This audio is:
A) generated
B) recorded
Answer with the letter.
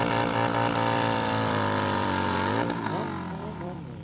A